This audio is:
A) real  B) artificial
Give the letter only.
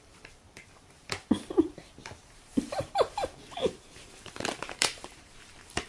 B